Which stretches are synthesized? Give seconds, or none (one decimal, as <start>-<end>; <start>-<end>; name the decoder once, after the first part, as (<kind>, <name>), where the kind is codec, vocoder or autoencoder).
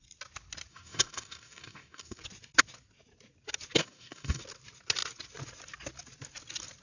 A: 0.7-2.2 (codec, DAC); 3.8-4.4